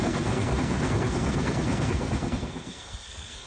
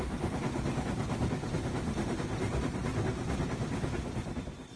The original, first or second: second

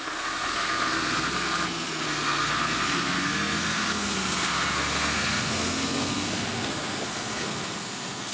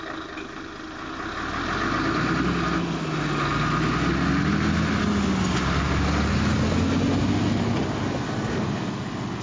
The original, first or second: second